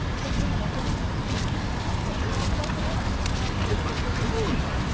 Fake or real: real